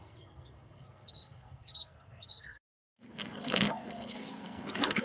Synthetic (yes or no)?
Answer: yes